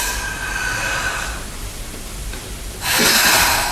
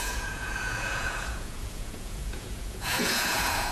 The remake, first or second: second